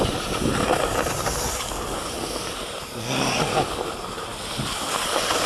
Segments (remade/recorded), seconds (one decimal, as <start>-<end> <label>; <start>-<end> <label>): 0.0-5.5 recorded